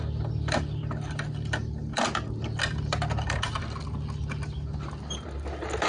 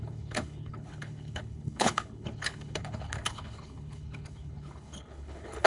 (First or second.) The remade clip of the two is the second